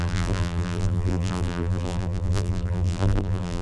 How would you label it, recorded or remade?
remade